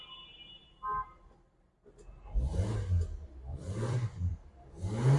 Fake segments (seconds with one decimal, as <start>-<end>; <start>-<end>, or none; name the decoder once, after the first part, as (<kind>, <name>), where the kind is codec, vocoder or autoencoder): 3.5-4.3 (vocoder, Vocos)